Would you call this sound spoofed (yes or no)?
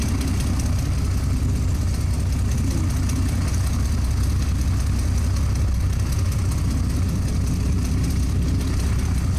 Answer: no